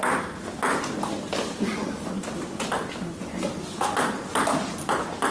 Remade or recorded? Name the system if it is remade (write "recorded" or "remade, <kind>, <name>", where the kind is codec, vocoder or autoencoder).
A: recorded